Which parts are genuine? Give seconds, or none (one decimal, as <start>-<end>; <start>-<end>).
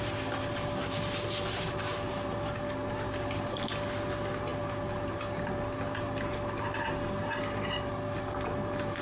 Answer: 0.0-9.0